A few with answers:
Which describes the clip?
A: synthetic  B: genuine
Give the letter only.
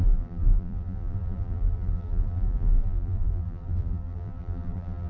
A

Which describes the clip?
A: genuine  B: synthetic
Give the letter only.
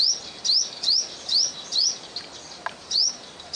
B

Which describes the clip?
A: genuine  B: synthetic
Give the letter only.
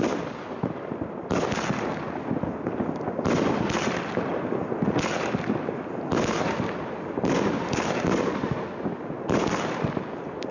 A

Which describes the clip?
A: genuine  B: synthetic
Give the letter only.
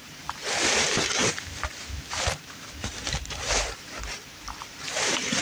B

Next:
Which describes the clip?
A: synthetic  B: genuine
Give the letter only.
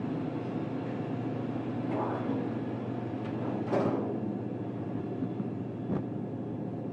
B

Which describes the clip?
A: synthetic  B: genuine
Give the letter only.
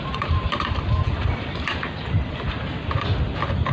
A